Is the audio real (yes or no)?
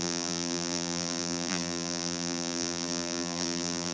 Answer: no